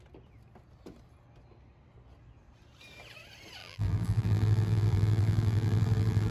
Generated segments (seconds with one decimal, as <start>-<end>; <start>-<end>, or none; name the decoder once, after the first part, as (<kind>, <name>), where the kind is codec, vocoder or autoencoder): 3.6-6.3 (vocoder, BigVGAN v2)